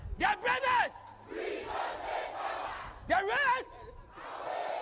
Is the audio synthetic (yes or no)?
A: no